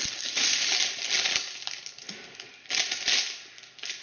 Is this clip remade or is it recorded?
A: recorded